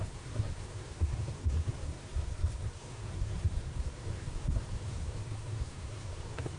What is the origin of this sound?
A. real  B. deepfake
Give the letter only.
B